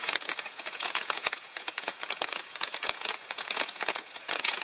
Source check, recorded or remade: remade